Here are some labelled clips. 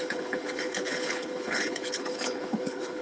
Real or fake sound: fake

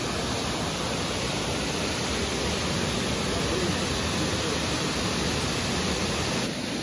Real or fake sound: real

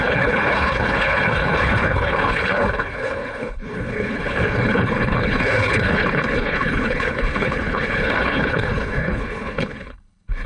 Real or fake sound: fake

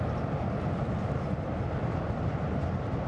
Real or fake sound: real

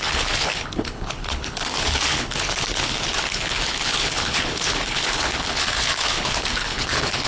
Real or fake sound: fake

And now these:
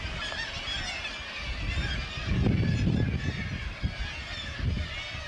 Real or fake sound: real